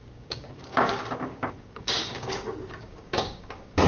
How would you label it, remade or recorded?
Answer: remade